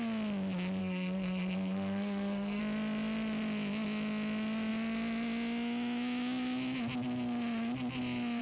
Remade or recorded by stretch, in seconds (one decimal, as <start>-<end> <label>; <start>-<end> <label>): 0.0-0.8 recorded; 0.8-2.6 remade; 2.6-8.4 recorded

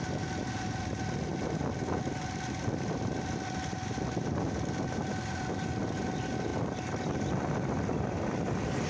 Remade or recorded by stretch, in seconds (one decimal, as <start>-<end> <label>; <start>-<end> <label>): 0.0-8.9 recorded

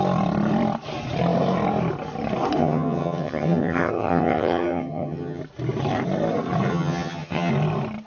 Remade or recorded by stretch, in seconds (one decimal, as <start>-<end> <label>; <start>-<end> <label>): 0.0-2.6 recorded; 2.6-5.4 remade; 5.4-6.7 recorded; 6.7-7.5 remade; 7.5-8.1 recorded

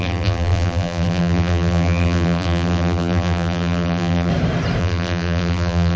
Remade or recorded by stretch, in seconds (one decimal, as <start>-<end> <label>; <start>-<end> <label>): 0.0-4.3 remade; 4.3-4.8 recorded; 4.8-6.0 remade

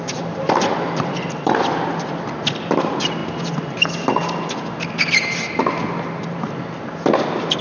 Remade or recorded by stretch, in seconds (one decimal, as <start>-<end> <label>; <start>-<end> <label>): 0.0-7.6 recorded

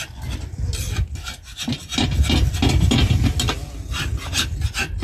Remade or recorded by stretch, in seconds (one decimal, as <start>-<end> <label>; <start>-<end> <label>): 0.0-5.0 recorded